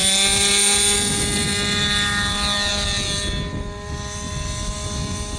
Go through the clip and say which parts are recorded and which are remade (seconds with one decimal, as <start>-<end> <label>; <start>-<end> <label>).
0.0-5.4 recorded